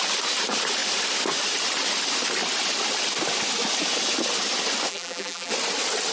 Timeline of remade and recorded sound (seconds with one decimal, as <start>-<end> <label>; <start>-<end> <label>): 0.0-4.9 recorded; 4.9-5.5 remade; 5.5-6.1 recorded